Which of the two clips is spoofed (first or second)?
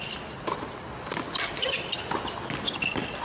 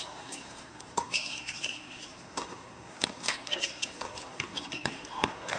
second